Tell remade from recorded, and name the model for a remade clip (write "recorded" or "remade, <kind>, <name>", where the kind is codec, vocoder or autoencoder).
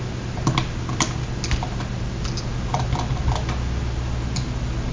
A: recorded